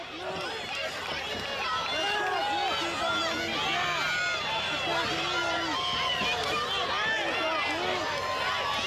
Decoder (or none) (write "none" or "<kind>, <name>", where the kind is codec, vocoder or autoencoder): none